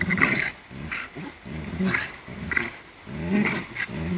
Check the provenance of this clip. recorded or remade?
recorded